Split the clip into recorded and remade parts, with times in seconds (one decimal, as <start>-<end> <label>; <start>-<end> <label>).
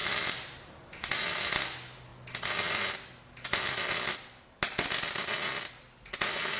0.0-1.1 remade; 1.1-6.6 recorded